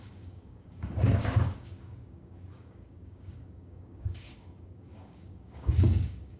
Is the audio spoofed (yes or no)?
yes